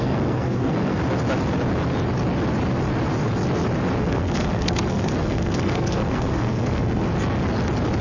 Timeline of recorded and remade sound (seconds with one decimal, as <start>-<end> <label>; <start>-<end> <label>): 0.0-1.0 remade; 1.0-4.0 recorded; 4.0-7.0 remade; 7.0-8.0 recorded

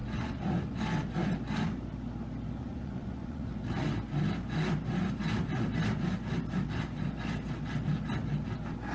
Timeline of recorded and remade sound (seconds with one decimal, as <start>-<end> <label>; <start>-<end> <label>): 0.0-0.8 remade; 0.8-2.6 recorded; 2.6-3.5 remade; 3.5-8.9 recorded

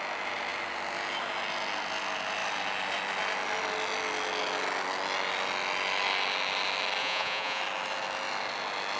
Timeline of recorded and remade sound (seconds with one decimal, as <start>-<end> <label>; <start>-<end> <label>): 0.0-7.0 recorded; 7.0-7.6 remade; 7.6-9.0 recorded

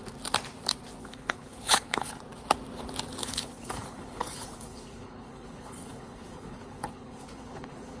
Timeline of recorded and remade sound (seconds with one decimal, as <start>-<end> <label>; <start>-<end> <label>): 0.0-1.0 recorded; 1.0-2.2 remade; 2.2-3.2 recorded; 3.2-8.0 remade

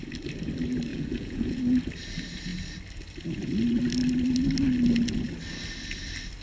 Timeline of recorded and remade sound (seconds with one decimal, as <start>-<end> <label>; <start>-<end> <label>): 0.0-0.9 recorded; 0.9-1.6 remade; 1.6-6.4 recorded

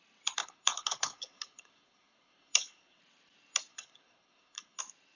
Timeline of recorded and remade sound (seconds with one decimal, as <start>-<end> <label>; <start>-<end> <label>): 0.0-0.4 recorded; 0.4-3.0 remade; 3.0-3.7 recorded; 3.7-4.8 remade; 4.8-5.2 recorded

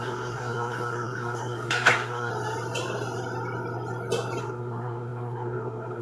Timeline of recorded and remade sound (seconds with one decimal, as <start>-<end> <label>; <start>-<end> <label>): 0.0-2.3 remade; 2.3-4.4 recorded; 4.4-6.0 remade

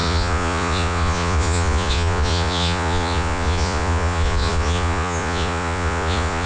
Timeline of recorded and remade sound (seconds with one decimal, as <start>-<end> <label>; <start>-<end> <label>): 0.0-6.5 remade